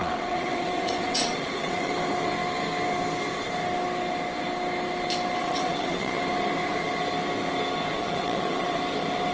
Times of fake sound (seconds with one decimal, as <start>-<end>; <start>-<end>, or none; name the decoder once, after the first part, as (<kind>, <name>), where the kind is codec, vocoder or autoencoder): 0.0-1.9 (vocoder, WaveNeXt); 5.4-6.2; 7.9-8.8